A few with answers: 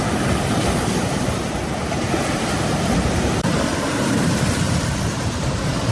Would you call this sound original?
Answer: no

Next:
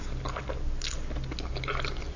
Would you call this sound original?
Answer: yes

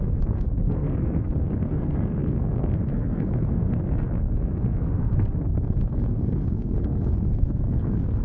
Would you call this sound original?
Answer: no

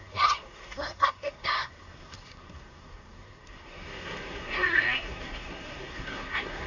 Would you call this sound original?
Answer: no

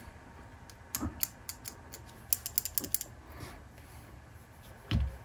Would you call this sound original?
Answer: yes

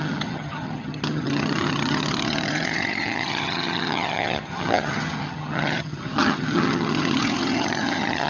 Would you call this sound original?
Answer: no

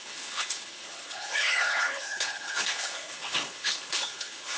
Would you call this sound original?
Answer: no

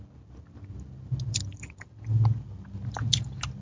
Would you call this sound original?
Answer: yes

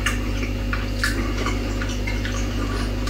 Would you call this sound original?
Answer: yes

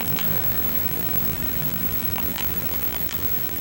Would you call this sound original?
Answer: no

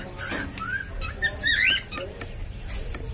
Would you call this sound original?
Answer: yes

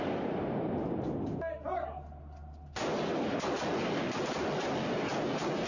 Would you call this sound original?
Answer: yes